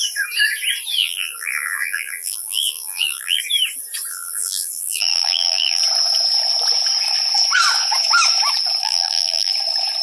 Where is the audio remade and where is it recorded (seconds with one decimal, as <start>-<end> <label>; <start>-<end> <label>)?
0.0-1.0 recorded; 1.0-3.4 remade; 3.4-4.1 recorded; 4.1-5.8 remade; 5.8-8.8 recorded; 8.8-9.5 remade; 9.5-10.0 recorded